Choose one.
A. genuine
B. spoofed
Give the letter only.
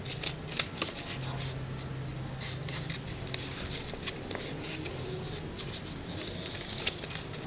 A